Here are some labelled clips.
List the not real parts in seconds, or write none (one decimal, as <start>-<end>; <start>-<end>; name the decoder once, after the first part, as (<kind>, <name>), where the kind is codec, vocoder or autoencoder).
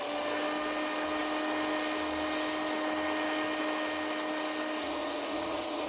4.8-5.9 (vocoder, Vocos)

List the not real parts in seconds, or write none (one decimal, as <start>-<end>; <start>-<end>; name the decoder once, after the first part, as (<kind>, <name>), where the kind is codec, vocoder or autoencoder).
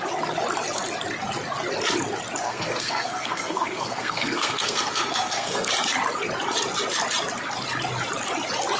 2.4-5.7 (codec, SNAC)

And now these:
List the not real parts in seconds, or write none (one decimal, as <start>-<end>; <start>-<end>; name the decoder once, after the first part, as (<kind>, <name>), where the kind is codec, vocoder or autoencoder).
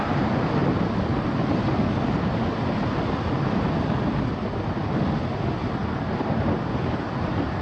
none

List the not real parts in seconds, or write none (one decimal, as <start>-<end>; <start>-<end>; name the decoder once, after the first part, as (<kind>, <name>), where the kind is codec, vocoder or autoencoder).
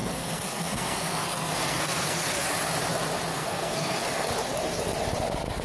0.0-2.5 (codec, SNAC); 3.3-4.3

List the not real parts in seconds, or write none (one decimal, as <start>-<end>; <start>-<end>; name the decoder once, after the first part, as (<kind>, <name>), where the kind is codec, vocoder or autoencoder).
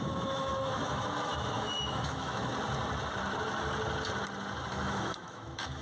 0.0-2.5 (autoencoder, DAC-VAE); 4.7-5.8